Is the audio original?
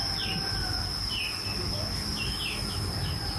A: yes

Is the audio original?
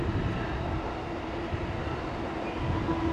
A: yes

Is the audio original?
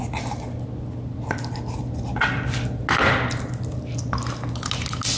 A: yes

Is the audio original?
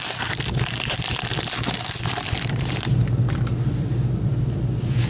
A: yes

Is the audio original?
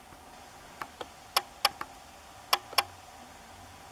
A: yes